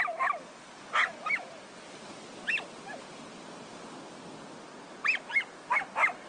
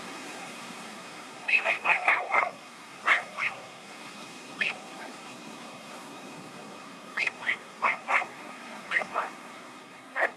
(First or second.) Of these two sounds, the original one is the first